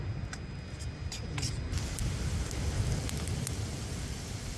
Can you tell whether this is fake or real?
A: real